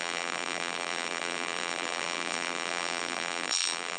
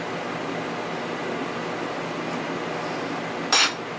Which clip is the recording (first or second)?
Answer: second